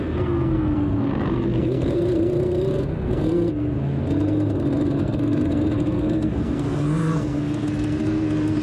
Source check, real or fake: fake